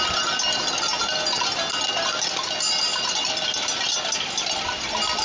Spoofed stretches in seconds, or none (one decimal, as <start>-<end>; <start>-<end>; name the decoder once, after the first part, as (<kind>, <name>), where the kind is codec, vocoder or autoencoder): none